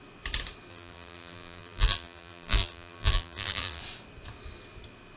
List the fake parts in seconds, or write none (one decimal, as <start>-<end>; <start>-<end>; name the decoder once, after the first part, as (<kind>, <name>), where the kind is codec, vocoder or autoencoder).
0.7-3.8 (vocoder, BigVGAN v2)